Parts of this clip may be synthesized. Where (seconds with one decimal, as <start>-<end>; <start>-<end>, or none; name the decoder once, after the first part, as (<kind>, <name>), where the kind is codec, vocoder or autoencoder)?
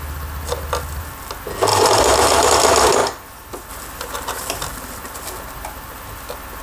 1.7-2.5 (vocoder, BigVGAN v2)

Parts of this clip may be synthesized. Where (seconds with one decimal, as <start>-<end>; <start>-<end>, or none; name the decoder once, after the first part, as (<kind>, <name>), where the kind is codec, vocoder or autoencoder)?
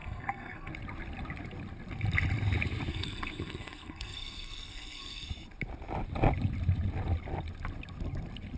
0.0-0.7 (codec, SNAC); 2.9-5.3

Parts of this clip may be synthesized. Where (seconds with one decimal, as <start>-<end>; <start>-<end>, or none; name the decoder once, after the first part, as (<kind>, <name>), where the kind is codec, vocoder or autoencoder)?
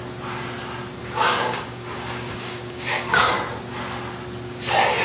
1.0-3.3 (codec, DAC)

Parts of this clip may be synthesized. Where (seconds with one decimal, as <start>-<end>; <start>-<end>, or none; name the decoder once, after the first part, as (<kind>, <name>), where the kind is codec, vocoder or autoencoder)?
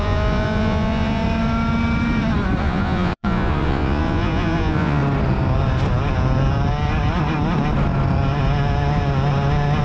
0.0-1.2 (vocoder, Vocos); 2.6-5.0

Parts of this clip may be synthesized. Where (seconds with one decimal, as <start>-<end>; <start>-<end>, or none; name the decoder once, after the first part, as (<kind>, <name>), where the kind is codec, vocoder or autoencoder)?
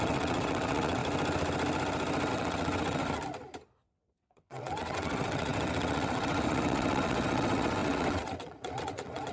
0.0-1.0 (vocoder, WaveNeXt); 2.3-3.0; 3.8-9.3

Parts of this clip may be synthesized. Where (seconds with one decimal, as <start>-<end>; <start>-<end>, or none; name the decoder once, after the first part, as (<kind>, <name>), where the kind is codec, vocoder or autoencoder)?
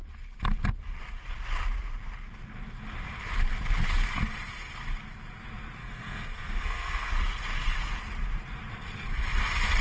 5.8-7.1 (codec, SNAC)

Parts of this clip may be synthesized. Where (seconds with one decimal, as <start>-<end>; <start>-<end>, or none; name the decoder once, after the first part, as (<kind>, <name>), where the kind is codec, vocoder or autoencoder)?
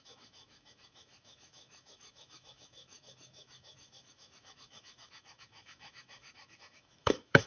0.0-7.5 (autoencoder, DAC-VAE)